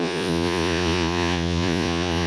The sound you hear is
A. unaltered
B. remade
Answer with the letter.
B